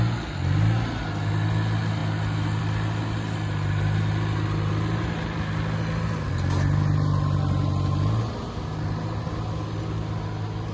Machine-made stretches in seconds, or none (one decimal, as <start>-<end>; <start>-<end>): none